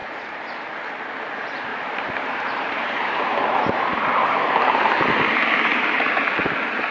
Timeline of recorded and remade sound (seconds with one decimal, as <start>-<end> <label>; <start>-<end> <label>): 0.0-0.9 remade; 0.9-1.7 recorded; 1.7-4.7 remade; 4.7-5.7 recorded; 5.7-6.2 remade; 6.2-6.9 recorded